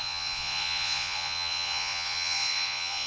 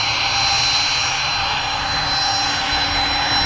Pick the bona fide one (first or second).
second